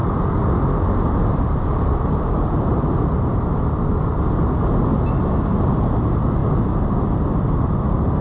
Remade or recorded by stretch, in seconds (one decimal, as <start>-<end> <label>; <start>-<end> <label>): 0.0-8.2 recorded